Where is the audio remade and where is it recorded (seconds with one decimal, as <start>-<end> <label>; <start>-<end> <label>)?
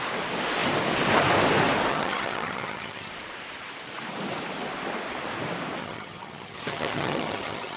0.0-1.9 recorded; 1.9-3.1 remade; 3.1-5.8 recorded; 5.8-7.8 remade